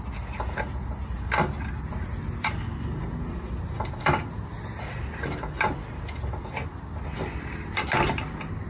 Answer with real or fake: real